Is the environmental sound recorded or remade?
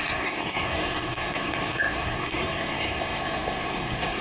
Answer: remade